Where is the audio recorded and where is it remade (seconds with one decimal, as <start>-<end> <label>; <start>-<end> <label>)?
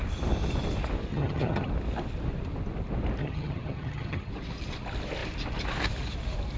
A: 0.0-1.1 recorded; 1.1-1.7 remade; 1.7-3.2 recorded; 3.2-4.3 remade; 4.3-6.6 recorded